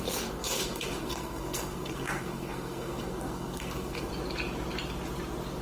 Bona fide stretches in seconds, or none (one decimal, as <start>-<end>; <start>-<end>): 4.1-5.6